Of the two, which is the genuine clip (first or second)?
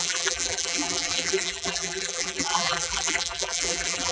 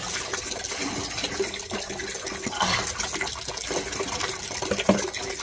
second